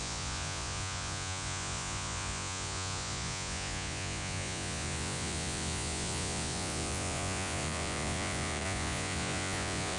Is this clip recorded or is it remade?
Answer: remade